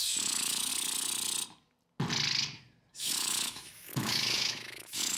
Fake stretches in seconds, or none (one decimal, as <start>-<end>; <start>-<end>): 0.0-0.7; 2.9-5.2